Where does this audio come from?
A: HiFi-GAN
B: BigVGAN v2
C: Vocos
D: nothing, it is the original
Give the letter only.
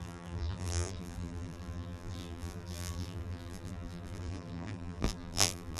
B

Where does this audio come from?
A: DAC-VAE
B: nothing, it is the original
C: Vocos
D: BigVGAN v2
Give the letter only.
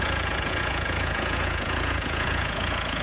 C